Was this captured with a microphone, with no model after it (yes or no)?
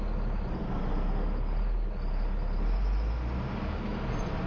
yes